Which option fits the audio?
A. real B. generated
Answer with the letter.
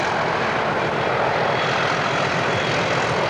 A